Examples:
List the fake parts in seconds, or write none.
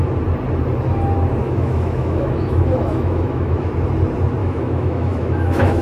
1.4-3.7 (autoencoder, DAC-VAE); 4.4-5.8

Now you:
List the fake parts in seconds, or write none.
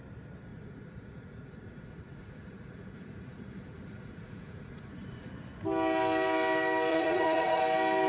0.5-5.3 (vocoder, Vocos); 6.9-7.6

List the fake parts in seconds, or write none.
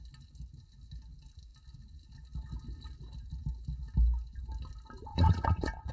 5.1-5.9 (vocoder, Vocos)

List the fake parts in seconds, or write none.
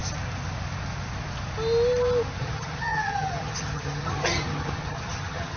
2.4-5.6 (vocoder, HiFi-GAN)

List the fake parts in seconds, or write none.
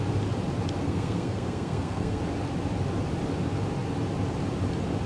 0.8-2.2 (codec, SNAC)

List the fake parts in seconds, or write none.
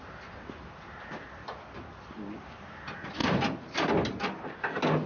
none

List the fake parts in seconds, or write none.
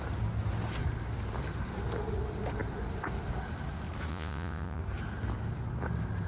4.1-4.8 (vocoder, Vocos)